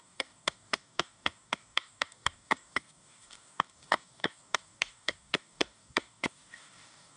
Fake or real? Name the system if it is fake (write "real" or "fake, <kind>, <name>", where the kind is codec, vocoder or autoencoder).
fake, codec, DAC